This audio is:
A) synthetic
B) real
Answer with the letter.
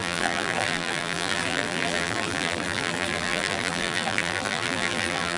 A